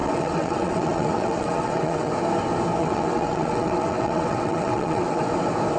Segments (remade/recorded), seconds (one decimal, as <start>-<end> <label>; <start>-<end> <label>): 0.0-2.1 remade; 2.1-2.8 recorded; 2.8-5.2 remade; 5.2-5.8 recorded